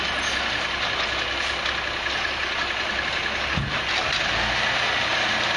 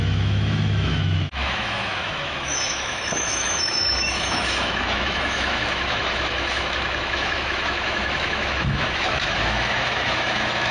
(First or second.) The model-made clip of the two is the second